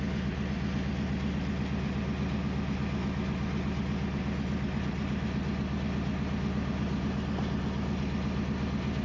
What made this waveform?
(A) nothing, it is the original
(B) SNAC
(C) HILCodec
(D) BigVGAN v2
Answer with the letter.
A